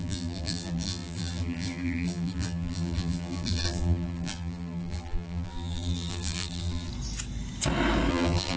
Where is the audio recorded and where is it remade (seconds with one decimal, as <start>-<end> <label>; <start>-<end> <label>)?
0.0-6.9 remade; 6.9-8.1 recorded; 8.1-8.6 remade